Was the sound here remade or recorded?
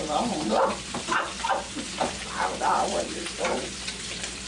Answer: remade